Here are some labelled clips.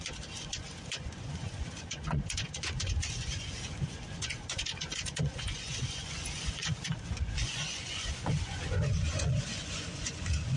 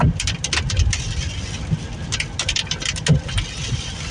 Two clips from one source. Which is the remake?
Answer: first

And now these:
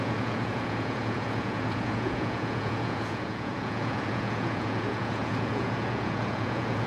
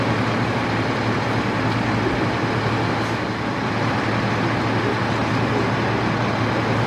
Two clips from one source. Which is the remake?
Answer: first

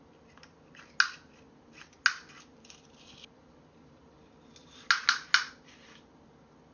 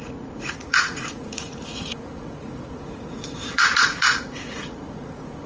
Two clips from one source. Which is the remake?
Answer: second